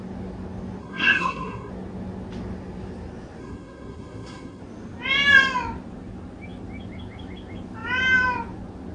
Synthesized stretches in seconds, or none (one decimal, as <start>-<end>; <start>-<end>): 0.8-1.7; 3.4-4.6